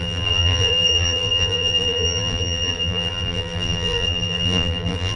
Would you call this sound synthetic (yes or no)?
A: yes